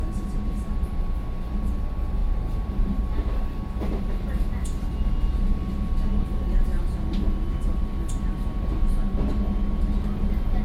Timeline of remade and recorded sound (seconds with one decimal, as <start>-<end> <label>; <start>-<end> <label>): 0.0-2.2 recorded; 2.2-3.0 remade; 3.0-10.6 recorded